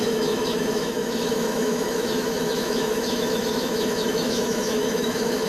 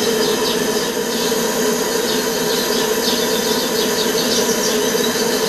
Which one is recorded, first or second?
second